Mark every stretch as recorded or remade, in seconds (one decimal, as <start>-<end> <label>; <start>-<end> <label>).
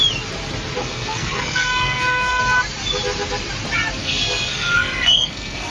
0.0-0.8 recorded; 0.8-2.4 remade; 2.4-4.0 recorded; 4.0-5.7 remade